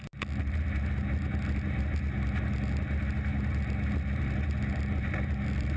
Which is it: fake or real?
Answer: real